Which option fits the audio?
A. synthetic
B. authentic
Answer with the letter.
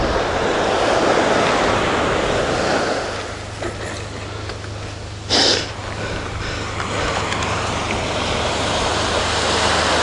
B